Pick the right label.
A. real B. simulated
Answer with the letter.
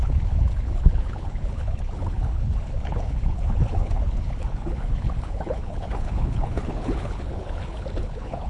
B